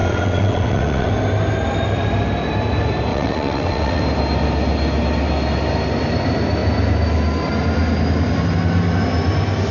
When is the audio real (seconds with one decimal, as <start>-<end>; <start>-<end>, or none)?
1.1-3.1; 4.0-9.7